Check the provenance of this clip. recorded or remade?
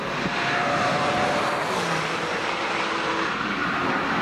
remade